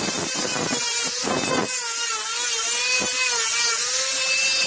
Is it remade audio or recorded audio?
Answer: recorded